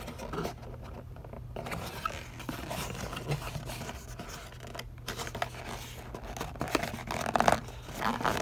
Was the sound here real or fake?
real